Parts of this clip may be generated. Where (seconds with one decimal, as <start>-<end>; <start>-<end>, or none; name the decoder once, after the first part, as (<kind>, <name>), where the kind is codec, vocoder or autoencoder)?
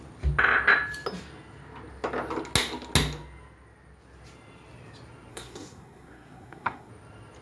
5.3-6.9 (codec, SNAC)